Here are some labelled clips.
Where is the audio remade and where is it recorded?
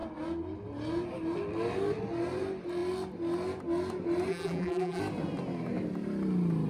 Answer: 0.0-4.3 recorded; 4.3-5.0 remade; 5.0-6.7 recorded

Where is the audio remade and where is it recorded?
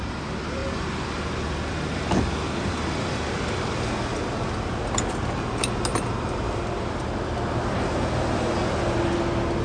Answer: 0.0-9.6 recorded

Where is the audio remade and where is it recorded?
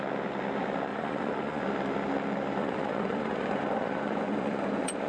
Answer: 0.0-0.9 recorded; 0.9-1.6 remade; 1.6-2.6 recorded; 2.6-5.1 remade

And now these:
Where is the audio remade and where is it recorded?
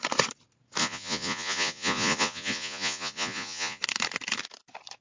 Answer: 0.0-0.8 recorded; 0.8-3.8 remade; 3.8-5.0 recorded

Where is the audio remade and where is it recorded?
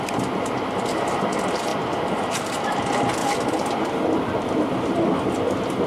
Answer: 0.0-1.7 recorded; 1.7-2.5 remade; 2.5-3.2 recorded; 3.2-4.6 remade; 4.6-5.9 recorded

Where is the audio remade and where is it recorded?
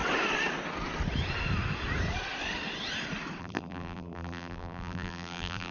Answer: 0.0-3.4 recorded; 3.4-5.7 remade